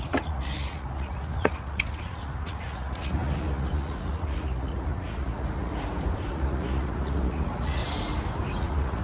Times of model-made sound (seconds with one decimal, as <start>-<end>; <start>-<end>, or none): 0.0-5.7; 6.3-7.8; 8.6-9.0